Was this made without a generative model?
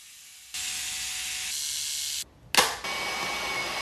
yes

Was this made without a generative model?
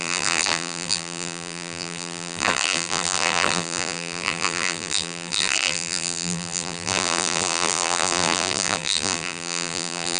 no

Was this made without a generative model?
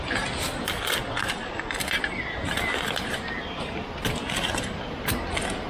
yes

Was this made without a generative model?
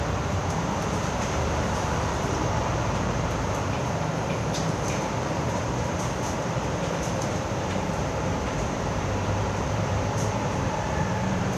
no